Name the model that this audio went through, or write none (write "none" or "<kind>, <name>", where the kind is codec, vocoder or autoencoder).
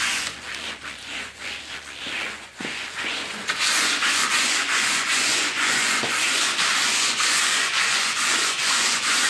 vocoder, Vocos